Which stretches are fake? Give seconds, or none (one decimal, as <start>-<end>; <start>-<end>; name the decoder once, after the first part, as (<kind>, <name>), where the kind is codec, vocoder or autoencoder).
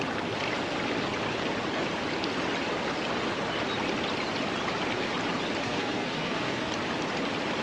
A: 5.6-6.7 (codec, SNAC)